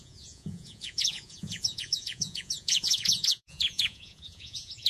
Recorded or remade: remade